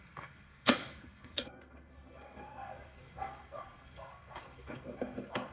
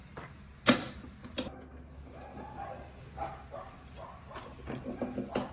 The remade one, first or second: first